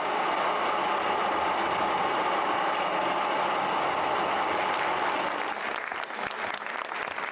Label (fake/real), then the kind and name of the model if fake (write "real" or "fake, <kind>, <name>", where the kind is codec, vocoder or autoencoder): real